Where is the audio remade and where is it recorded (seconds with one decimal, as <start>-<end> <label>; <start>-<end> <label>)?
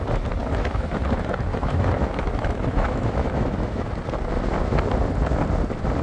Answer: 0.0-0.4 recorded; 0.4-1.0 remade; 1.0-1.5 recorded; 1.5-3.9 remade; 3.9-6.0 recorded